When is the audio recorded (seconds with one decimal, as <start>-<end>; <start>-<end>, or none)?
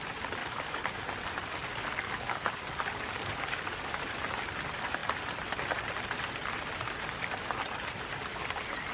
0.0-0.4; 1.0-1.7; 4.1-8.9